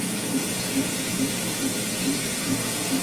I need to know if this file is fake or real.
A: fake